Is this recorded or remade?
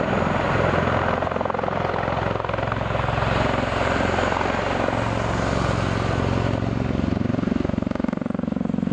recorded